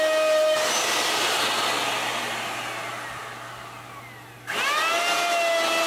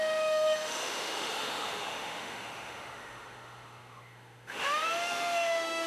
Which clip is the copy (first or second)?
second